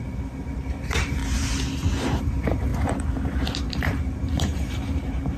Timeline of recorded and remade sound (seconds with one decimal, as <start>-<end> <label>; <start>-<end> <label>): 0.0-1.2 remade; 1.2-2.2 recorded; 2.2-2.7 remade; 2.7-3.6 recorded; 3.6-5.4 remade